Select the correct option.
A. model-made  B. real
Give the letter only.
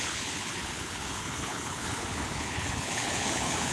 A